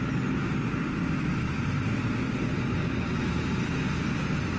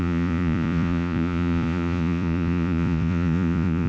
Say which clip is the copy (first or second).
second